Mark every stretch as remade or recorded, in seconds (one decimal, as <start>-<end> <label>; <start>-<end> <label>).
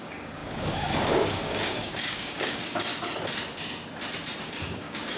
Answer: 0.0-2.9 remade; 2.9-4.5 recorded; 4.5-5.2 remade